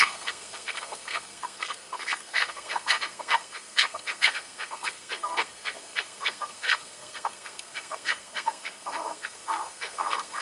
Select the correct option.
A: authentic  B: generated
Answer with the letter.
B